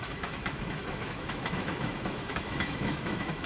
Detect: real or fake fake